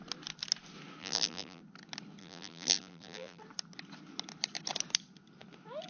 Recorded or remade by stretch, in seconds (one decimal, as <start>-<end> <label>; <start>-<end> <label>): 0.0-1.0 recorded; 1.0-1.6 remade; 1.6-2.2 recorded; 2.2-3.4 remade; 3.4-5.9 recorded